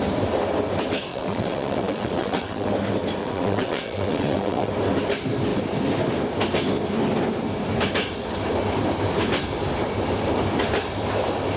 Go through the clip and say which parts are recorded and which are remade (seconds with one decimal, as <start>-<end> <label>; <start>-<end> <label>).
0.0-1.1 recorded; 1.1-2.7 remade; 2.7-3.2 recorded; 3.2-4.7 remade; 4.7-11.6 recorded